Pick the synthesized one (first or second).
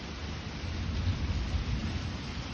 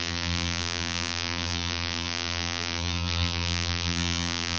second